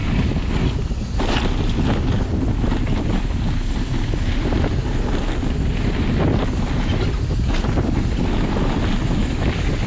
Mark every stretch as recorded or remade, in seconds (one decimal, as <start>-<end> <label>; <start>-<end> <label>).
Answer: 0.0-9.9 recorded